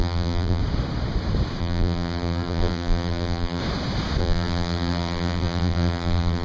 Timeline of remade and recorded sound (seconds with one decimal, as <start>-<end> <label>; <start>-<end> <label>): 0.0-0.6 remade; 0.6-1.6 recorded; 1.6-3.6 remade; 3.6-4.2 recorded; 4.2-6.4 remade